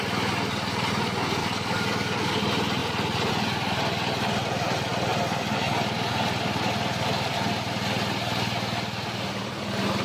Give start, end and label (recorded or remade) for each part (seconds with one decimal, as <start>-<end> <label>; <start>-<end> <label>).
0.0-1.4 recorded; 1.4-2.4 remade; 2.4-10.0 recorded

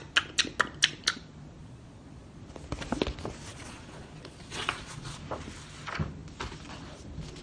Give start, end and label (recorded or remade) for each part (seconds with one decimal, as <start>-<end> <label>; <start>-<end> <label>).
0.0-1.6 recorded; 1.6-2.4 remade; 2.4-3.5 recorded; 3.5-5.2 remade; 5.2-7.4 recorded